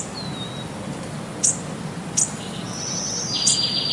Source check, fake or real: real